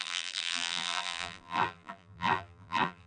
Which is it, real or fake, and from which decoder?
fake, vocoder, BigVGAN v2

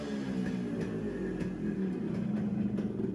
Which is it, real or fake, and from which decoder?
real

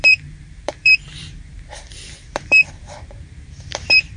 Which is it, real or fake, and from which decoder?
fake, vocoder, BigVGAN v2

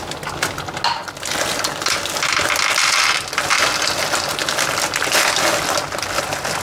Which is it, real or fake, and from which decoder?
real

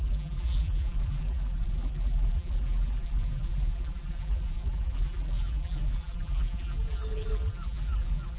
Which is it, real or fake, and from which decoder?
fake, vocoder, BigVGAN v2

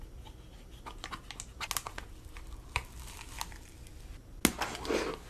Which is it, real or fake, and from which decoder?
real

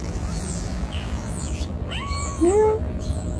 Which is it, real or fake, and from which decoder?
fake, vocoder, BigVGAN v2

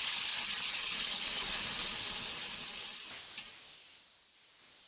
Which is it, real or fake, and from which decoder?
real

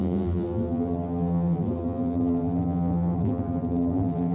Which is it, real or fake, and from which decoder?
fake, vocoder, BigVGAN v2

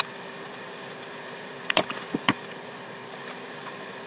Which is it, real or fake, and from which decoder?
fake, vocoder, BigVGAN v2